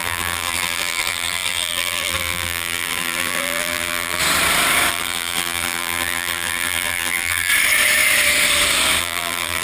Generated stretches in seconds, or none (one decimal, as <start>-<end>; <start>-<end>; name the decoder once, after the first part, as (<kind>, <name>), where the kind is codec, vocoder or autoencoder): 0.0-4.2 (vocoder, BigVGAN v2); 4.9-7.5; 9.0-9.6

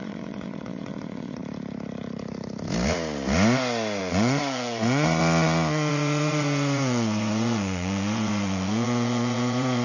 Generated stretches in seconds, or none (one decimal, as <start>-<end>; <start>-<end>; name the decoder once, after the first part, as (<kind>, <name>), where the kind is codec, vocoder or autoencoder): 0.0-1.4 (vocoder, Vocos); 4.0-5.2; 5.9-9.8